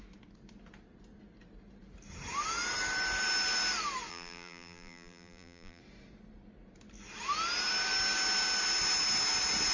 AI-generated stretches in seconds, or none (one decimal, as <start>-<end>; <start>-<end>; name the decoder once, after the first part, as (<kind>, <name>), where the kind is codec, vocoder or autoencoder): 4.1-5.8 (vocoder, BigVGAN v2)